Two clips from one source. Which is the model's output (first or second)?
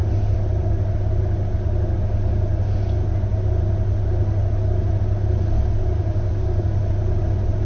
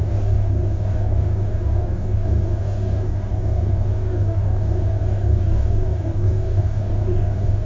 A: second